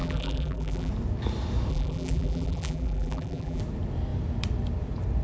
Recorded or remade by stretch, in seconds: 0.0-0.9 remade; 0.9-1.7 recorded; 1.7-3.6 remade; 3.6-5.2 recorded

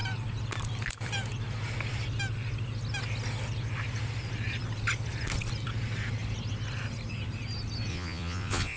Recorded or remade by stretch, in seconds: 0.0-7.9 recorded; 7.9-8.8 remade